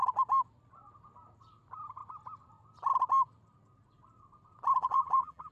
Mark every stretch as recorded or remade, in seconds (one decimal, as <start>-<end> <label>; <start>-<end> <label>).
0.0-4.8 recorded; 4.8-5.5 remade